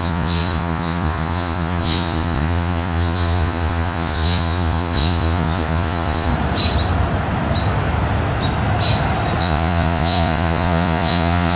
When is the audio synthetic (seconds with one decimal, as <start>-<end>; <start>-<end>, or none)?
0.0-6.3; 9.4-11.6